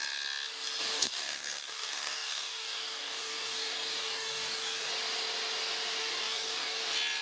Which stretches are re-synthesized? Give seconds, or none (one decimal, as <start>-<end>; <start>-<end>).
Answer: 0.8-4.9; 6.0-6.8